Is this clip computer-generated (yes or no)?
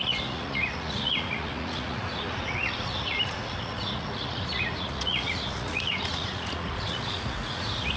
yes